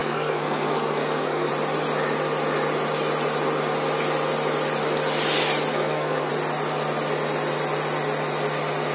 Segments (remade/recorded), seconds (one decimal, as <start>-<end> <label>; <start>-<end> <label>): 0.0-1.5 remade; 1.5-5.7 recorded; 5.7-6.3 remade; 6.3-8.9 recorded